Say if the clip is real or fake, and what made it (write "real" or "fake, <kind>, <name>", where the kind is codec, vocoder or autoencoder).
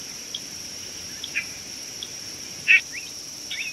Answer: fake, vocoder, BigVGAN v2